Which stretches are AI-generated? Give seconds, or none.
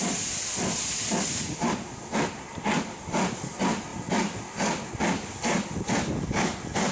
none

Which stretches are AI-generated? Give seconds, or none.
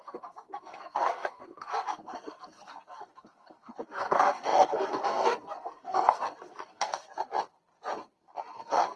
0.0-7.1 (codec, SNAC); 8.6-9.0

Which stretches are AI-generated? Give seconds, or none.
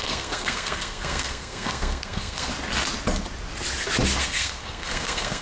0.0-2.5 (codec, SNAC); 4.2-5.4